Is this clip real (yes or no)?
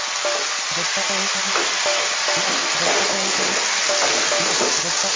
yes